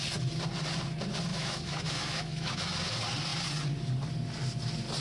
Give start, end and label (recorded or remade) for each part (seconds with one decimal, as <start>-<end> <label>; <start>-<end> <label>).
0.0-1.3 recorded; 1.3-2.6 remade; 2.6-5.0 recorded